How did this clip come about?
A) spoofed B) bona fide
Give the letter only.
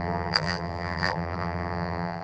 A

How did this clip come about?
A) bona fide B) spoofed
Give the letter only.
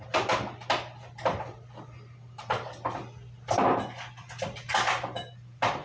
A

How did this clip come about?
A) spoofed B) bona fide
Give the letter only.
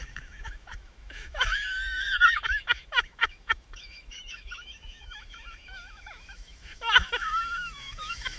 A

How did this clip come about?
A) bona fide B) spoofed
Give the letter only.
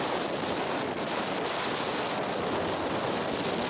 A